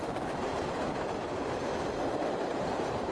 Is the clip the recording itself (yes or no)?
no